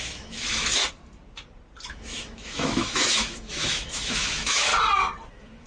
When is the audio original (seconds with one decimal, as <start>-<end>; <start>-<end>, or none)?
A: 0.8-1.9; 4.7-5.3